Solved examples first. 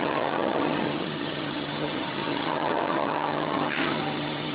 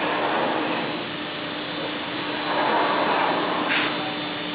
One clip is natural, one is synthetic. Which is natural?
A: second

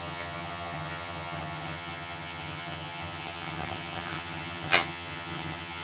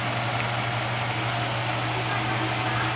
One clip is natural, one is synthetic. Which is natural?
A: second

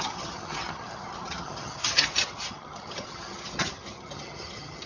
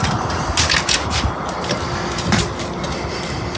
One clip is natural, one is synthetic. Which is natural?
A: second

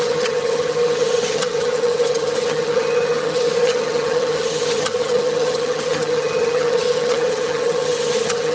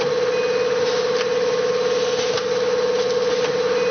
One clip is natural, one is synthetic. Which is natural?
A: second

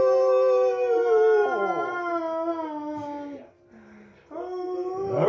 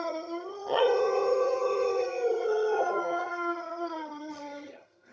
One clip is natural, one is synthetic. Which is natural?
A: first